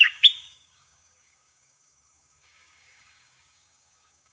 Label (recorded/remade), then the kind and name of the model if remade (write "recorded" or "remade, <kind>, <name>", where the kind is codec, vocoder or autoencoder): remade, codec, DAC